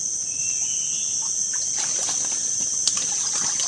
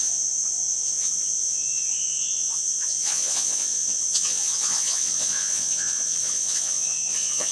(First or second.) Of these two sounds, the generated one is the second